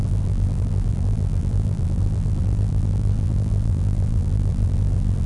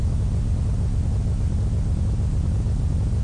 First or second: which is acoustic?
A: second